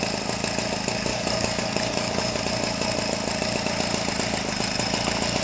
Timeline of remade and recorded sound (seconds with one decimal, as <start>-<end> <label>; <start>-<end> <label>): 0.0-1.1 recorded; 1.1-2.4 remade; 2.4-5.4 recorded

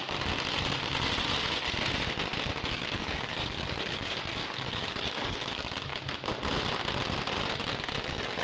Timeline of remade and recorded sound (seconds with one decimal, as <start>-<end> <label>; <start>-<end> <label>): 0.0-2.7 recorded; 2.7-5.9 remade; 5.9-8.0 recorded; 8.0-8.4 remade

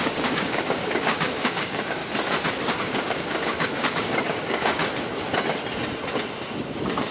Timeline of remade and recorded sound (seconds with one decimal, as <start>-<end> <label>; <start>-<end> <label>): 0.0-2.0 remade; 2.0-2.8 recorded; 2.8-4.8 remade; 4.8-7.1 recorded

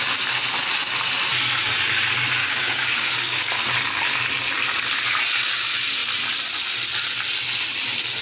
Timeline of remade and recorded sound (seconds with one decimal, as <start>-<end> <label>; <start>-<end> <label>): 0.0-2.4 recorded; 2.4-3.5 remade; 3.5-8.2 recorded

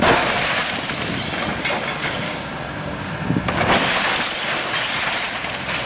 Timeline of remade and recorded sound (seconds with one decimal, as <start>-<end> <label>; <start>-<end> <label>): 0.0-2.0 recorded; 2.0-3.1 remade; 3.1-5.9 recorded

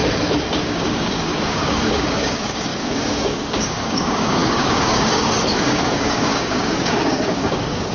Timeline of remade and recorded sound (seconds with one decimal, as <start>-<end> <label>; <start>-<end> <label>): 0.0-0.6 recorded; 0.6-7.9 remade

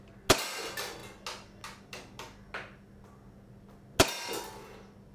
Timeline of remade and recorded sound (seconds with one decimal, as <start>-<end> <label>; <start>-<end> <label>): 0.0-5.1 recorded

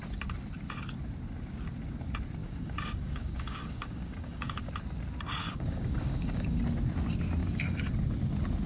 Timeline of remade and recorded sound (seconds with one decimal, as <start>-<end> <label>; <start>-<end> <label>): 0.0-2.4 recorded; 2.4-4.7 remade; 4.7-5.4 recorded; 5.4-6.6 remade; 6.6-7.4 recorded; 7.4-7.9 remade; 7.9-8.7 recorded